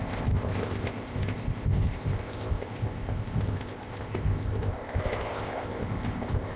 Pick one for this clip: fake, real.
fake